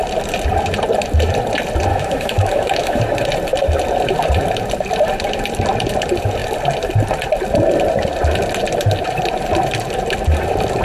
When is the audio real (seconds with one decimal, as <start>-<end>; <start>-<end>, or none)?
0.0-1.9; 3.0-10.8